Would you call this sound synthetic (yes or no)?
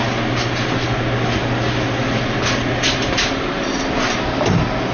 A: no